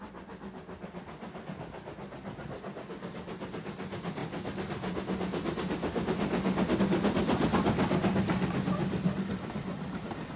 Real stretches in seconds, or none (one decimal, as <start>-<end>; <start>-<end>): 0.0-10.4